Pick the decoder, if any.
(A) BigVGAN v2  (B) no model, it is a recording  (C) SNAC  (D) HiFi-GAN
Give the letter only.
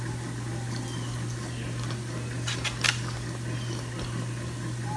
B